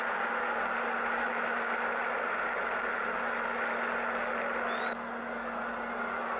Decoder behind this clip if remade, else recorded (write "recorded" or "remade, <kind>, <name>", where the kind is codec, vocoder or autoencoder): recorded